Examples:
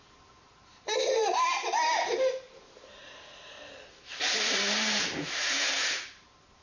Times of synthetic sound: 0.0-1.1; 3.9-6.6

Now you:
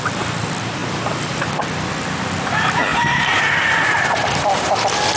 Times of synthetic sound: 2.9-4.8

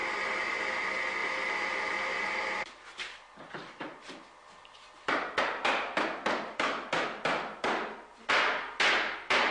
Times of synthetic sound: 1.2-5.4

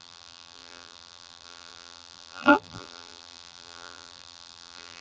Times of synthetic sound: 0.0-5.0

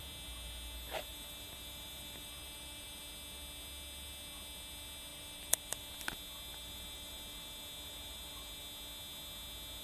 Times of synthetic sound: 1.1-3.0; 5.1-5.8; 6.5-8.6